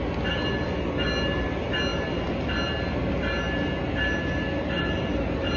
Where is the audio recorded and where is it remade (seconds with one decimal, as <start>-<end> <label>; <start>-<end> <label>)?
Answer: 0.0-5.6 recorded

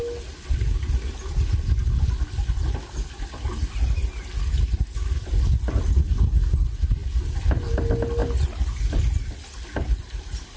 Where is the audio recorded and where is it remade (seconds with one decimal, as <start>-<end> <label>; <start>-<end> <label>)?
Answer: 0.0-10.6 recorded